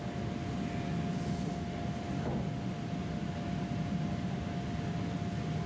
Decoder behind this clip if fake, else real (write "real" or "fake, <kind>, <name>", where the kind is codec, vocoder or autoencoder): real